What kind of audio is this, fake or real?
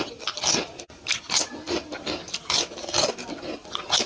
real